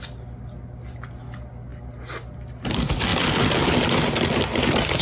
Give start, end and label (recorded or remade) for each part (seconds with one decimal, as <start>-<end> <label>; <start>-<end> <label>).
0.0-5.0 recorded